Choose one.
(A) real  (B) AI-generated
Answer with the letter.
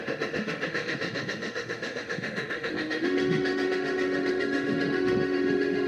B